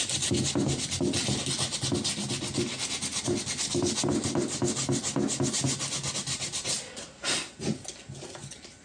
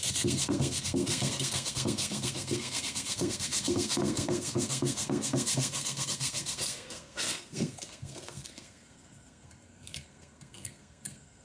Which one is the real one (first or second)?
first